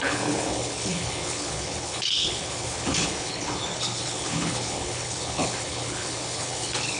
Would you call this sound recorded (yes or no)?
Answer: no